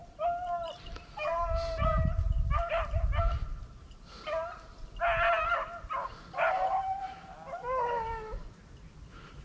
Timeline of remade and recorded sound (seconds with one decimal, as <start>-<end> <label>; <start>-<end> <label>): 0.0-9.4 recorded